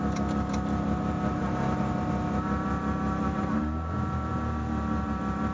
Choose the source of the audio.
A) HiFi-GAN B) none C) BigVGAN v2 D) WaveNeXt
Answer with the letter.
C